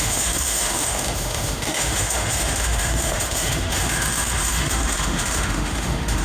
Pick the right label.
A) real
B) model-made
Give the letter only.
B